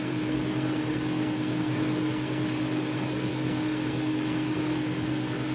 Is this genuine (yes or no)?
no